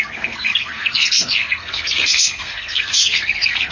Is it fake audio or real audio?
fake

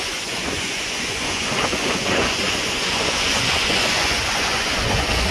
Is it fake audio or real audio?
fake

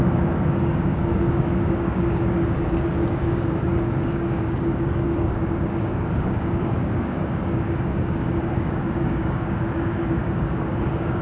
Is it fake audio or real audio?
fake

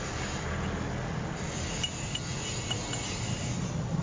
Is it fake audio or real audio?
real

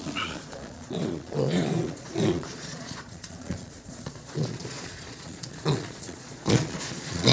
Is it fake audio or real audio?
fake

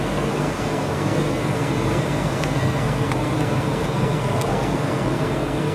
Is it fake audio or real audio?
fake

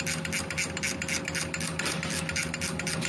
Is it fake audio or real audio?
real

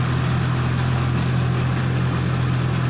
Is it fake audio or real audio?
real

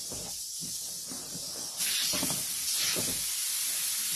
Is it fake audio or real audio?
real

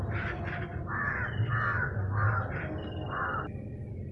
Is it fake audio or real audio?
real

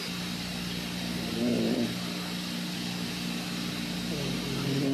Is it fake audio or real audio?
real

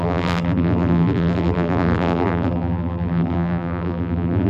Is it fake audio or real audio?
fake